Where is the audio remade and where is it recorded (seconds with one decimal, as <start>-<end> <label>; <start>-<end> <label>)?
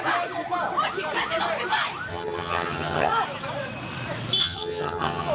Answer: 0.0-2.1 recorded; 2.1-3.1 remade; 3.1-4.4 recorded; 4.4-5.3 remade